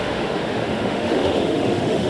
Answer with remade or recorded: remade